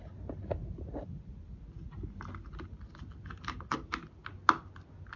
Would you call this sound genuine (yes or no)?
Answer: yes